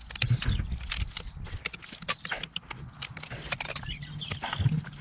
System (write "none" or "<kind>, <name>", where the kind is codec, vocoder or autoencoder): none